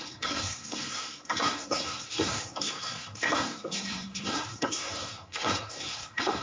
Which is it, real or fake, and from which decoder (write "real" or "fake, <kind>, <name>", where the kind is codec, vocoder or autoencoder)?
fake, codec, SNAC